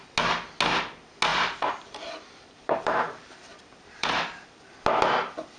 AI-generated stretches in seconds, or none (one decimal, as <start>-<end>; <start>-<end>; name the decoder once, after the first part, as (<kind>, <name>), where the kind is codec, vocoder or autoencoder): 1.3-4.7 (vocoder, BigVGAN v2)